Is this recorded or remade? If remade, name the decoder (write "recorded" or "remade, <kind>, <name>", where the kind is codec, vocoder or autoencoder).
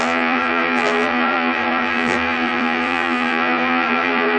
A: remade, vocoder, BigVGAN v2